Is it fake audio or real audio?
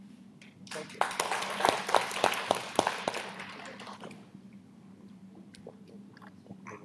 real